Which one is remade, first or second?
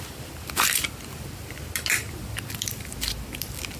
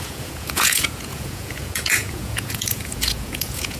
second